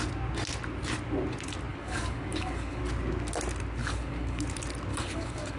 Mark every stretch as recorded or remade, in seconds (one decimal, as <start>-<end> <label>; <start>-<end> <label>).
0.0-1.7 recorded; 1.7-2.8 remade; 2.8-3.8 recorded; 3.8-4.4 remade; 4.4-4.9 recorded; 4.9-5.6 remade